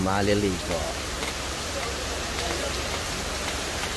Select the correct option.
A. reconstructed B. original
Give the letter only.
A